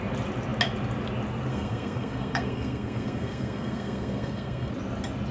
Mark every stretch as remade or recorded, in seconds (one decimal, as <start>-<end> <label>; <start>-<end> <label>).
0.0-1.5 recorded; 1.5-4.7 remade; 4.7-5.3 recorded